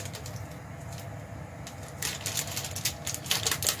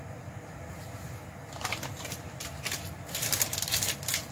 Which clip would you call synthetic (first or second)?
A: second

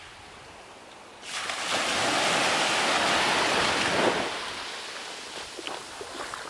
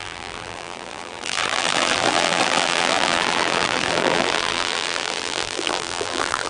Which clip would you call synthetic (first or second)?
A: second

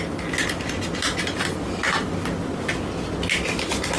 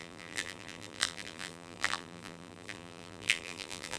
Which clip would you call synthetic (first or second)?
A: second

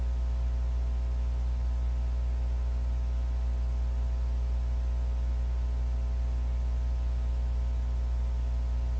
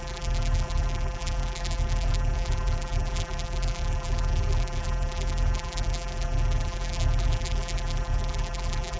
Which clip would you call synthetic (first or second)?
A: second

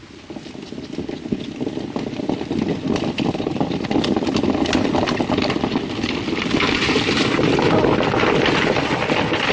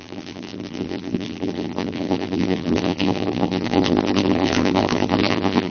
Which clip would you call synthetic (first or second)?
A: second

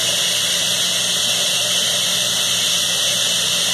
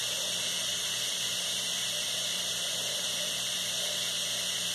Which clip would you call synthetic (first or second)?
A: second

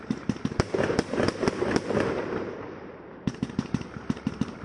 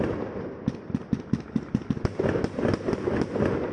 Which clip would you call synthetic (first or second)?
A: first